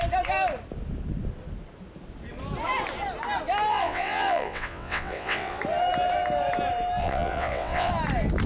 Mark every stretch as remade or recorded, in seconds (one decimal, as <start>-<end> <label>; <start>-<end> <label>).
0.0-3.7 recorded; 3.7-5.6 remade; 5.6-7.0 recorded; 7.0-7.9 remade; 7.9-8.5 recorded